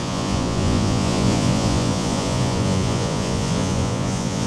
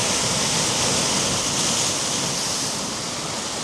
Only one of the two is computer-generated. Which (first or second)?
first